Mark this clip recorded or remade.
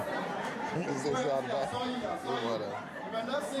remade